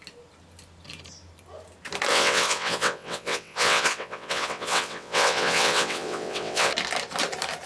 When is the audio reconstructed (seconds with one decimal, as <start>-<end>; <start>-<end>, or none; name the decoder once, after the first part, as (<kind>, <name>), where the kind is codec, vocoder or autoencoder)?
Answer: 2.1-6.7 (vocoder, WaveNeXt)